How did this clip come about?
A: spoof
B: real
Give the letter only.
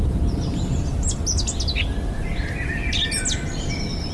B